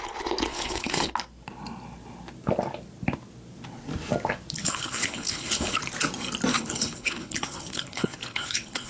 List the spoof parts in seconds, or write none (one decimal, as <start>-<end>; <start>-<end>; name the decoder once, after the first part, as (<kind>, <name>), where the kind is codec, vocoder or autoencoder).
0.5-1.1 (codec, HILCodec); 4.6-5.8; 6.5-8.9